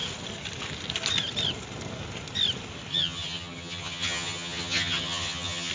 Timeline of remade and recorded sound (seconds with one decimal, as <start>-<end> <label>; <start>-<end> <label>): 0.0-2.9 recorded; 2.9-5.7 remade

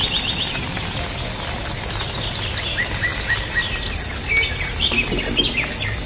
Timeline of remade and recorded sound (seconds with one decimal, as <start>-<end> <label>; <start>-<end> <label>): 0.0-6.1 recorded

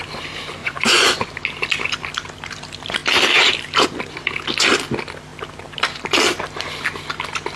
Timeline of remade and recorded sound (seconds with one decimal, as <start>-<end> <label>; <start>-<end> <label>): 0.0-0.6 recorded; 0.6-1.3 remade; 1.3-7.6 recorded

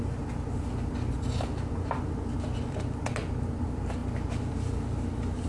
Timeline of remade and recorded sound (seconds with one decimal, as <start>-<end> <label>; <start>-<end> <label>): 0.0-5.5 recorded

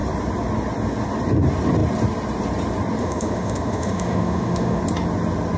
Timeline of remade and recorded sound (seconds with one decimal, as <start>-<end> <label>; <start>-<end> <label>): 0.0-3.0 recorded; 3.0-4.8 remade; 4.8-5.6 recorded

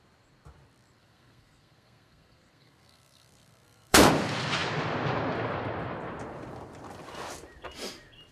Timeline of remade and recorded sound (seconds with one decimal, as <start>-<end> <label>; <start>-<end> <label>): 0.0-1.0 recorded; 1.0-4.1 remade; 4.1-8.3 recorded

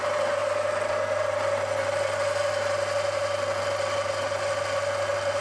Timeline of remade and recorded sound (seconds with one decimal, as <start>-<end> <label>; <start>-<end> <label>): 0.0-5.4 recorded

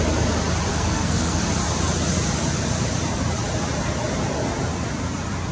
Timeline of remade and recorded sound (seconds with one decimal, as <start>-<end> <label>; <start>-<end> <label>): 0.0-0.7 recorded; 0.7-1.4 remade; 1.4-5.5 recorded